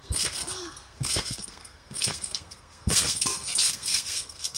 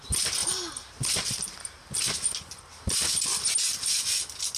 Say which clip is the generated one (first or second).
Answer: first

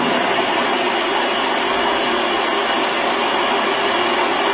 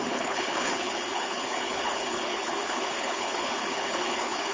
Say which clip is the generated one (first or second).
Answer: second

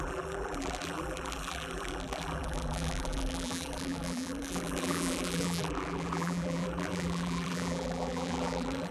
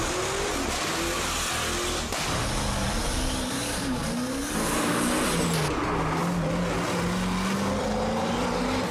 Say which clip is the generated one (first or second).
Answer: first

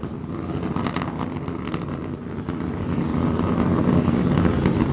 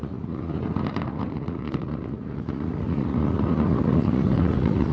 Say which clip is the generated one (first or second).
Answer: second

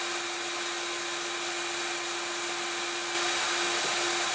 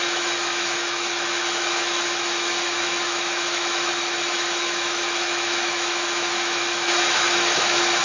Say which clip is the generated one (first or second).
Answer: second